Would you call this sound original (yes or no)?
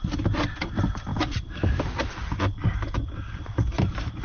yes